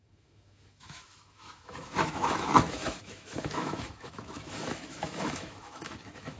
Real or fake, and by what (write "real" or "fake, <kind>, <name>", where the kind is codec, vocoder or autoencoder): fake, autoencoder, DAC-VAE